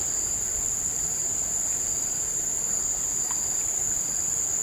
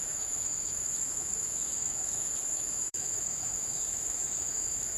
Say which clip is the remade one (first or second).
second